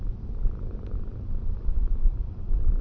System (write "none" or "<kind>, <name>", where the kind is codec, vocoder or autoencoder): vocoder, BigVGAN v2